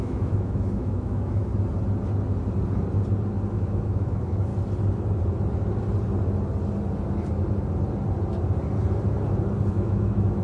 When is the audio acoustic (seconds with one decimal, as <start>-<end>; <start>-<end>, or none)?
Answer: 1.5-3.5; 4.5-9.7